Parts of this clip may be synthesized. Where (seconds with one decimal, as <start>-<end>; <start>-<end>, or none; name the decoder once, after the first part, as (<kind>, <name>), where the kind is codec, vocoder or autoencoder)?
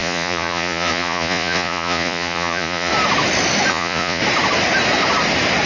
0.0-2.9 (vocoder, Vocos); 3.7-4.2